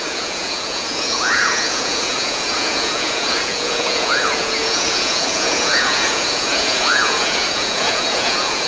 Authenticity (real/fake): fake